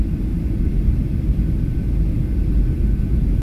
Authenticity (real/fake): real